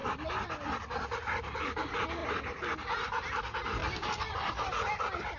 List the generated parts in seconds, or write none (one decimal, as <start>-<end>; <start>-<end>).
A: none